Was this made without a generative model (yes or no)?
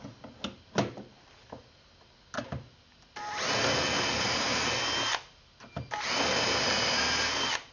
yes